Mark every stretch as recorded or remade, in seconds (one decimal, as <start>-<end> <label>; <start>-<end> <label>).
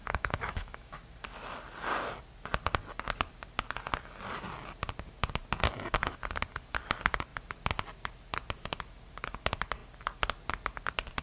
0.0-1.0 remade; 1.0-11.2 recorded